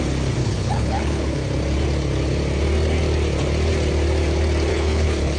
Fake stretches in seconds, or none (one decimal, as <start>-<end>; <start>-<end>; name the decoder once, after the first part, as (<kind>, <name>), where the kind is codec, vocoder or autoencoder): 0.4-1.4 (codec, HILCodec); 4.7-5.4